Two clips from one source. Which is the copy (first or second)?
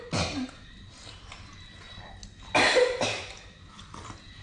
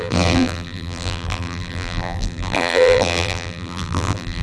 second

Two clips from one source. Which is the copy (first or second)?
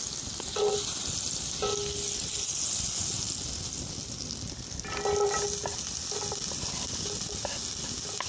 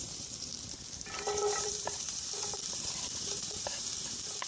second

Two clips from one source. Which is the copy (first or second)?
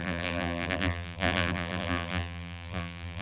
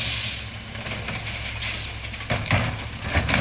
first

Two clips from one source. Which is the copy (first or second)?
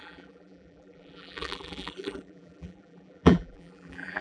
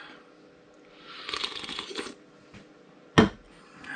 first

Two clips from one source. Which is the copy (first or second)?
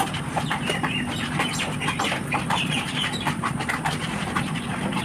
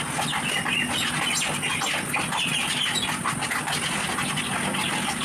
first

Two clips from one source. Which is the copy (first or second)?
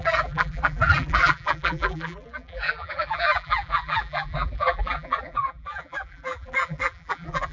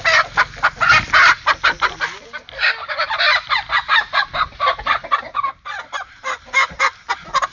first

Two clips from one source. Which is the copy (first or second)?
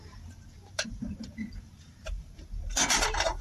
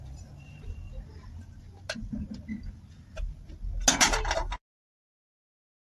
first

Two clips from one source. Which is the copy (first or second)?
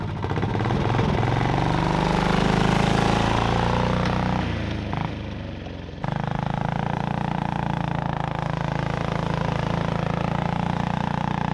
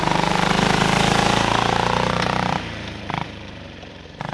second